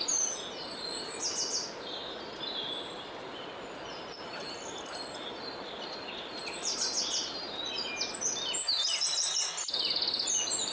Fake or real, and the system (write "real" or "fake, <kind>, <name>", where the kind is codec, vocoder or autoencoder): real